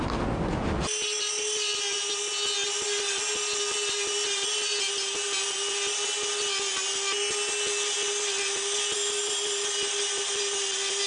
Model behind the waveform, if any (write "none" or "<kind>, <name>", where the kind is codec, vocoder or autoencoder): none